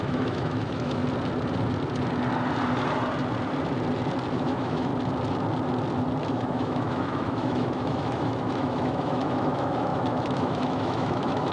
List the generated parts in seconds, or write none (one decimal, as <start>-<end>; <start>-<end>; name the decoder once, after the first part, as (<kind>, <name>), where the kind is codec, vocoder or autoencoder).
0.0-1.0 (autoencoder, DAC-VAE); 4.3-4.9; 6.3-11.5